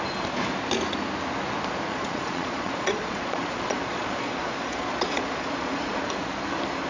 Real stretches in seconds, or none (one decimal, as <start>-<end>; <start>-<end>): 0.0-1.9; 6.0-6.9